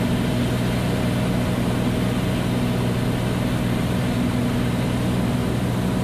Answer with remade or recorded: recorded